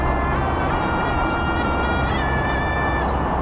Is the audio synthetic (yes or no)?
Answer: no